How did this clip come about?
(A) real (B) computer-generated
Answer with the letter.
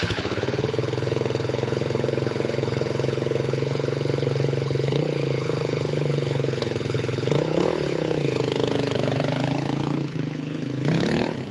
B